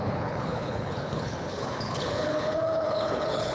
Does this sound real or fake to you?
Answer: fake